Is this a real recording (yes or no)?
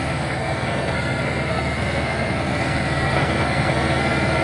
no